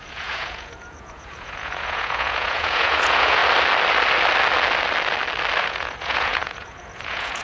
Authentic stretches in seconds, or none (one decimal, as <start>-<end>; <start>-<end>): 3.4-5.6

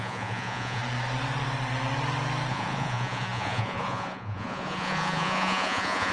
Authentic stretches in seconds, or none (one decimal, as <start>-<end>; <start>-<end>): 0.8-2.5